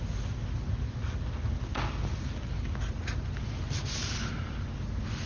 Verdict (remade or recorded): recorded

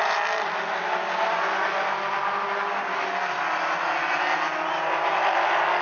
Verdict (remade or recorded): recorded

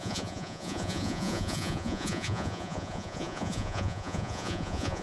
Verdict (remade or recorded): remade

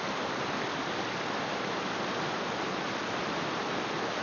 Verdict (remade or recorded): recorded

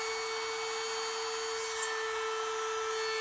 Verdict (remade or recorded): recorded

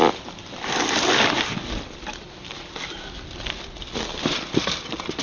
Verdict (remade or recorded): remade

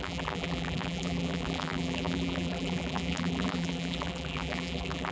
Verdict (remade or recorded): remade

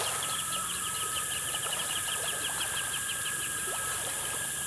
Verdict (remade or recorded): remade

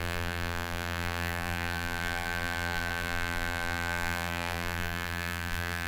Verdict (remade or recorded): remade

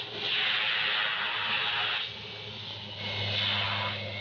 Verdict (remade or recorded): recorded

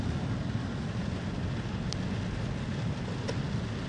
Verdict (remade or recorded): recorded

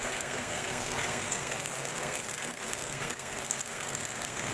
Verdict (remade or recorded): remade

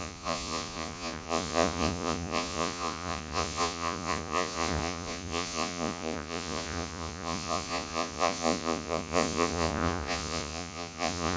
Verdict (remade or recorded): remade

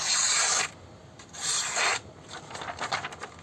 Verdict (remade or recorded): recorded